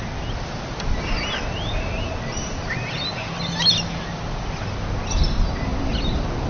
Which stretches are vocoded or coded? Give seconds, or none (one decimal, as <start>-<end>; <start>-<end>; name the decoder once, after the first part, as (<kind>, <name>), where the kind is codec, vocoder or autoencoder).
none